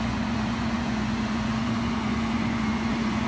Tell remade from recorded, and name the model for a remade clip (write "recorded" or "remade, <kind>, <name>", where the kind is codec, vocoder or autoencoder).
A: remade, vocoder, Vocos